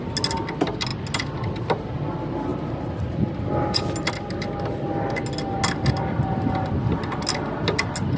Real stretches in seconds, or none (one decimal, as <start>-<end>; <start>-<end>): 0.0-8.2